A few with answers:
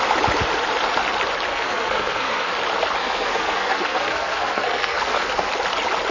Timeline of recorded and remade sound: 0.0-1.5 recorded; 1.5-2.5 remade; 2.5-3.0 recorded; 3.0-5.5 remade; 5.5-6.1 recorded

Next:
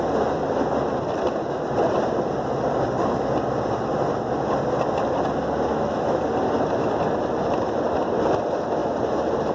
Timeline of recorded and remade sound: 0.0-5.7 recorded; 5.7-6.2 remade; 6.2-9.5 recorded

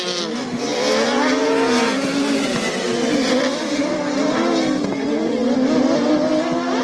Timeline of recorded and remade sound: 0.0-6.8 recorded